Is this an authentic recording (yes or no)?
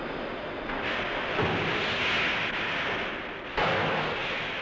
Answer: yes